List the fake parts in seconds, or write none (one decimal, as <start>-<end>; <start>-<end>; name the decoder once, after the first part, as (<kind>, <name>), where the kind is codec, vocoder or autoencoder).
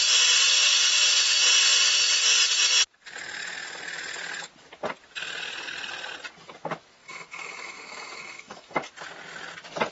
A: 7.0-8.9 (autoencoder, DAC-VAE)